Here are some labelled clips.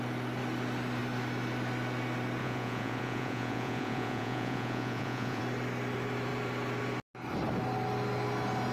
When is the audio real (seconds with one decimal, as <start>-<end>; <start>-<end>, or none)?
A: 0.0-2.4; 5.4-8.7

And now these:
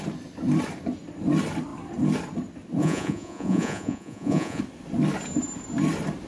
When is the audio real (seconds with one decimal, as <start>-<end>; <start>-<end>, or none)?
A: 0.0-2.8; 4.6-6.3

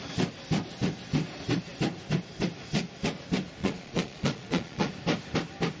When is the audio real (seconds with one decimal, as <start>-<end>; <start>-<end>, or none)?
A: 0.0-3.6; 4.9-5.8

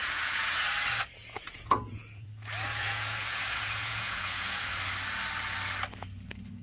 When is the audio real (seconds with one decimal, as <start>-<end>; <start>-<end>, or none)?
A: 0.6-1.2; 2.3-2.7; 4.6-6.6